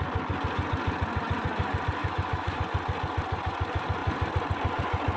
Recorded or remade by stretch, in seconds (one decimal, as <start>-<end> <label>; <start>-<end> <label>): 0.0-2.0 recorded; 2.0-2.6 remade; 2.6-5.2 recorded